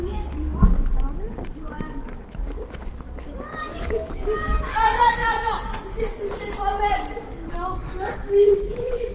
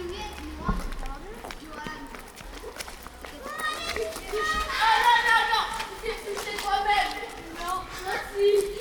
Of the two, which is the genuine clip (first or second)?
second